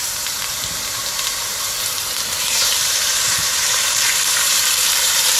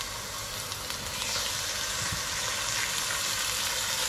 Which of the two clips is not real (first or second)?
first